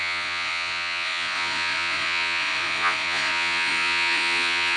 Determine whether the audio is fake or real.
fake